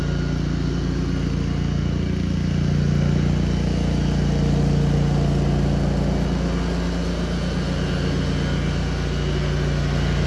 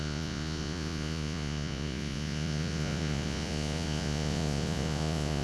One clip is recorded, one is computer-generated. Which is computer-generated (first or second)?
second